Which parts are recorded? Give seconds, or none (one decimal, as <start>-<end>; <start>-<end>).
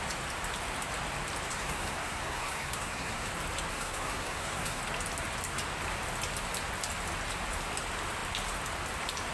0.0-1.5; 3.3-3.7; 4.8-9.3